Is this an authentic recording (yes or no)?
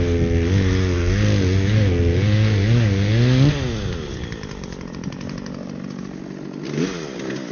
yes